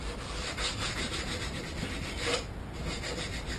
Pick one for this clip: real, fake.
real